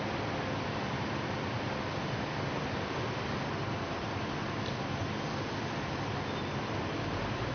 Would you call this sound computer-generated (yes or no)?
yes